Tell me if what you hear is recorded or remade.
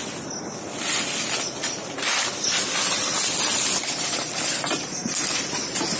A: recorded